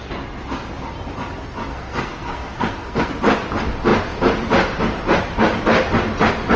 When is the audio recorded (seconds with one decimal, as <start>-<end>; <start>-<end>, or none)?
0.0-1.7; 3.1-6.6